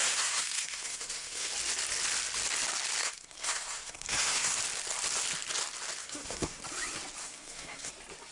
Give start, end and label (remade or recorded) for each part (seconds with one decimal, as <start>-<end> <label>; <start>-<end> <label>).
0.0-1.5 remade; 1.5-3.0 recorded; 3.0-4.6 remade; 4.6-6.0 recorded; 6.0-6.6 remade; 6.6-7.2 recorded; 7.2-7.9 remade; 7.9-8.3 recorded